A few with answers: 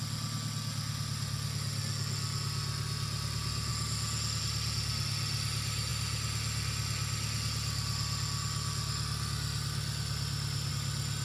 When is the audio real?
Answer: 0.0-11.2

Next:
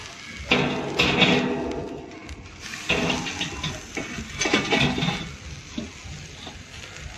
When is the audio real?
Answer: 0.0-7.2

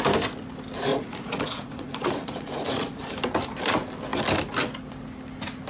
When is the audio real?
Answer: 0.0-0.9; 3.0-5.7